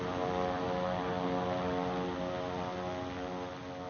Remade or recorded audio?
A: recorded